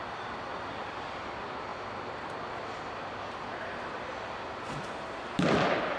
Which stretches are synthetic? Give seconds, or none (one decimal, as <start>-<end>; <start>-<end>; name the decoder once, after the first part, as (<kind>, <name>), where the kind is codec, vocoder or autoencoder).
0.0-1.7 (vocoder, BigVGAN v2); 3.1-6.0